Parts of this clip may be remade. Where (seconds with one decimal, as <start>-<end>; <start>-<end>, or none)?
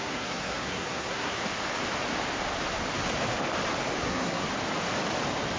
0.0-1.4; 4.0-4.4